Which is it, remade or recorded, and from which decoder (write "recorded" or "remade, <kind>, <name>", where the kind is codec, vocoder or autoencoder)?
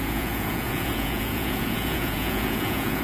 remade, vocoder, Vocos